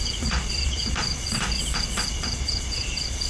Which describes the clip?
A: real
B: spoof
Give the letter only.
B